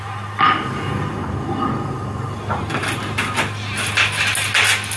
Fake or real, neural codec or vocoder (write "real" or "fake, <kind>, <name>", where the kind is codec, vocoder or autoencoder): real